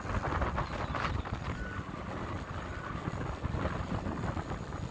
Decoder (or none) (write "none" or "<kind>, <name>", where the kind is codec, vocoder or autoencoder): none